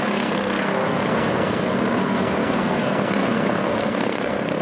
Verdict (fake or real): fake